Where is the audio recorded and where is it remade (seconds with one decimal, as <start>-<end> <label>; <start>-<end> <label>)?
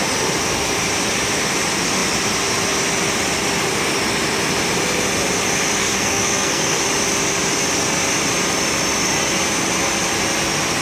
0.0-5.8 recorded; 5.8-6.8 remade; 6.8-10.8 recorded